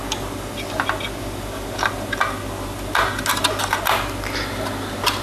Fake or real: real